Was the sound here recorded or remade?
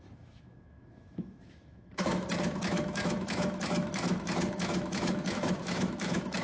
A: remade